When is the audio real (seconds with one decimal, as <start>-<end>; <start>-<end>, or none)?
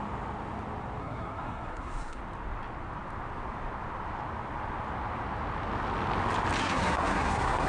0.0-1.0; 2.2-6.6